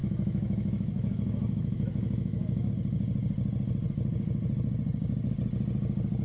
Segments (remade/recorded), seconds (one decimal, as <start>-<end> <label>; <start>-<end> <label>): 0.0-2.7 remade; 2.7-6.2 recorded